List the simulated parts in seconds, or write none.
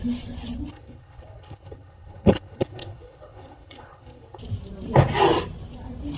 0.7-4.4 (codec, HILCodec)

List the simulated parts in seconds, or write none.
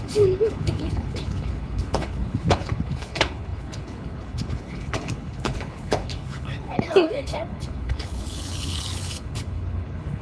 0.0-10.2 (codec, HILCodec)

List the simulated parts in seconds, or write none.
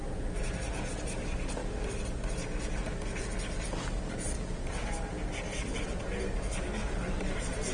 none